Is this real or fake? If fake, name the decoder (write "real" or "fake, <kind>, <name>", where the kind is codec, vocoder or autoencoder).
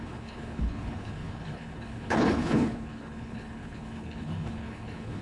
fake, codec, HILCodec